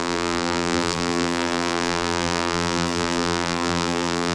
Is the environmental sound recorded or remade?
remade